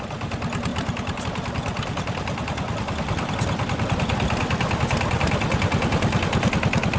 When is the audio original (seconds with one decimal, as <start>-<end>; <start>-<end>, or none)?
0.0-0.7; 1.2-1.7; 4.8-7.0